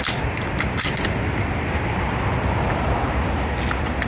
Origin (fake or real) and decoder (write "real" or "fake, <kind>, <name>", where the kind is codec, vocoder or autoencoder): real